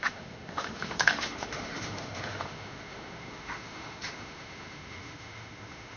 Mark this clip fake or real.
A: fake